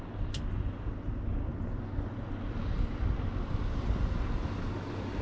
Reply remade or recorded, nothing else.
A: recorded